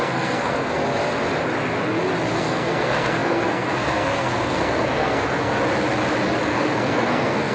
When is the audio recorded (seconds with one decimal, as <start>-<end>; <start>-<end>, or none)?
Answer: 0.8-2.3; 5.5-6.4